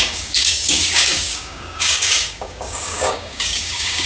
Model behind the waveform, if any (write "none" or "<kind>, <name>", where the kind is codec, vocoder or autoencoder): codec, DAC